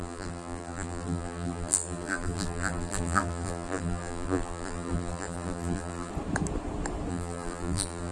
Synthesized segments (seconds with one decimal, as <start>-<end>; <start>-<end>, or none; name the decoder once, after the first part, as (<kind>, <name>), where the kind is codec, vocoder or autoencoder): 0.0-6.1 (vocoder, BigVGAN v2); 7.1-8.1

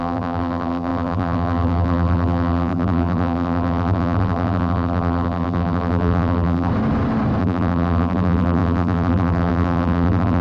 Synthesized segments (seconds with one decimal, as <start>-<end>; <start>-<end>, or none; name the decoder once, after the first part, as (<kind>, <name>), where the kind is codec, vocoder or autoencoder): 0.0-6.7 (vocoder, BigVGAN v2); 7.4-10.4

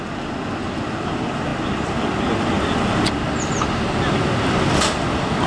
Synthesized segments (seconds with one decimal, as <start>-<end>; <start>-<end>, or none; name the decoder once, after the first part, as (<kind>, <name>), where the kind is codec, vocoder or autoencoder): none

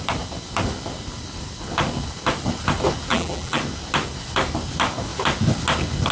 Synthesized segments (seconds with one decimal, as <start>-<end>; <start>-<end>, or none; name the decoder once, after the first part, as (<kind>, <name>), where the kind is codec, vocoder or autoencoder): 3.1-3.6 (vocoder, BigVGAN v2)